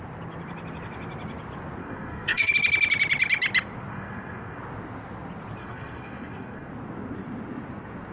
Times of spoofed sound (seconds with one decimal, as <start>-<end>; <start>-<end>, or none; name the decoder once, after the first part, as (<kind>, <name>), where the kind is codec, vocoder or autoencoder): 1.8-2.5 (codec, SNAC); 3.9-4.6; 5.6-6.7